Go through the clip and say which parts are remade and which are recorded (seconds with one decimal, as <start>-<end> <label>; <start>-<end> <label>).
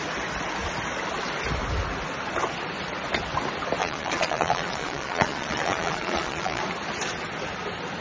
0.0-3.8 recorded; 3.8-6.6 remade; 6.6-8.0 recorded